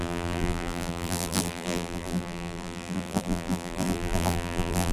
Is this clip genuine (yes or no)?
no